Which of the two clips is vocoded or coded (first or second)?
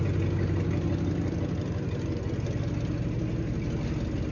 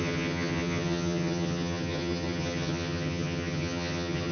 second